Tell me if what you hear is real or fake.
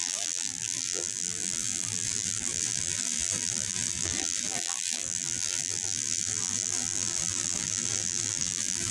fake